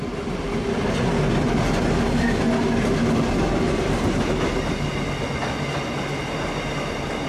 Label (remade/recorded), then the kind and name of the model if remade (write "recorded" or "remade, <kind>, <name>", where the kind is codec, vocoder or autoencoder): recorded